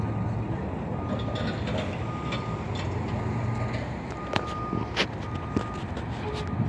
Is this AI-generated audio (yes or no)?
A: no